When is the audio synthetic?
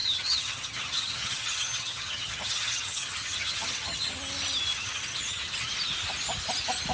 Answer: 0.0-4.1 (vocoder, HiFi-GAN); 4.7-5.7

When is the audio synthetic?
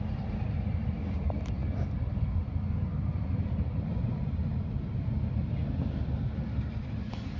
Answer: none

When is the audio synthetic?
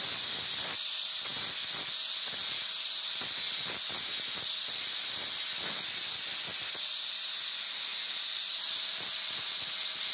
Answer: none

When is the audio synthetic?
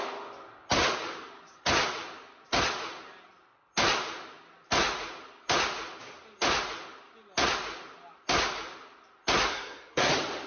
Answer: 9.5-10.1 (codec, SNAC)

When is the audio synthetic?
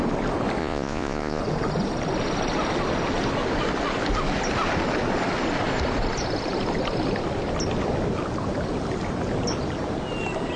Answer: 0.6-1.4 (vocoder, Vocos)